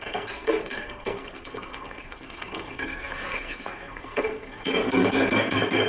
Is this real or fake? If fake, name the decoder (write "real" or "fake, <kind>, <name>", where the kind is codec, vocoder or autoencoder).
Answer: fake, codec, SNAC